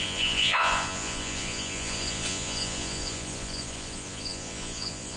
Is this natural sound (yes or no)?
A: no